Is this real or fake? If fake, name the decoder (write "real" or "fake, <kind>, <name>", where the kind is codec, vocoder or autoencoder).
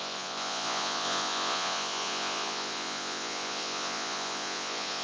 fake, vocoder, Vocos